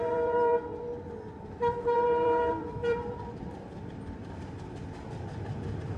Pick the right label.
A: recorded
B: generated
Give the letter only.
B